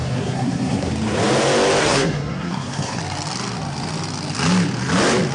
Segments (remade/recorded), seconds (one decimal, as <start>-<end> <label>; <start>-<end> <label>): 0.0-0.9 remade; 0.9-1.8 recorded; 1.8-3.0 remade; 3.0-5.3 recorded